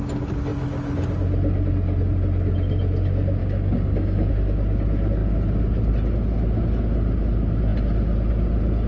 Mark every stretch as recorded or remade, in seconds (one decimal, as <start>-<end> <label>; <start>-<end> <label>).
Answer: 0.0-3.4 recorded; 3.4-4.3 remade; 4.3-8.9 recorded

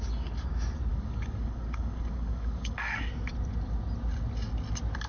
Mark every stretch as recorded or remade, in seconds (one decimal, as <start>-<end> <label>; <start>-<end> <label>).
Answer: 0.0-0.9 recorded; 0.9-3.1 remade; 3.1-5.1 recorded

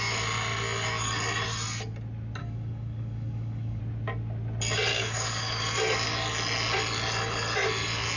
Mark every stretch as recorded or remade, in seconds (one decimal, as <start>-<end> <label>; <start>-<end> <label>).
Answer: 0.0-2.4 recorded; 2.4-3.8 remade; 3.8-4.9 recorded; 4.9-5.6 remade; 5.6-8.2 recorded

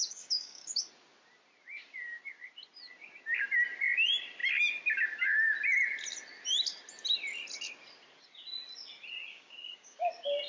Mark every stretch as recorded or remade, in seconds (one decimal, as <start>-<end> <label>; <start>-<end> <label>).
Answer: 0.0-0.8 remade; 0.8-9.3 recorded; 9.3-10.1 remade; 10.1-10.5 recorded

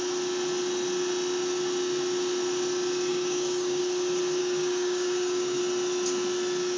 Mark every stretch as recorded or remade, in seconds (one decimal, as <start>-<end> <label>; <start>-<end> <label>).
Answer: 0.0-3.1 recorded; 3.1-3.8 remade; 3.8-4.4 recorded; 4.4-5.6 remade; 5.6-6.8 recorded

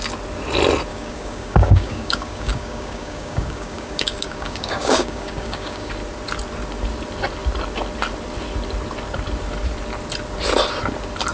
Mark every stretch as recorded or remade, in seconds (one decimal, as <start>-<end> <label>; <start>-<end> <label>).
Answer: 0.0-0.9 recorded; 0.9-5.9 remade; 5.9-11.3 recorded